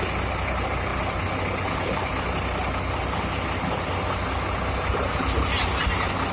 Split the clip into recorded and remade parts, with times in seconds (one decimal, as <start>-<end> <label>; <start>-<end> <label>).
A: 0.0-6.3 recorded